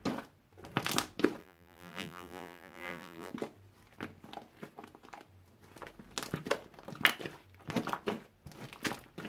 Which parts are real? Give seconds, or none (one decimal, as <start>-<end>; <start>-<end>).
0.0-1.4; 3.3-9.3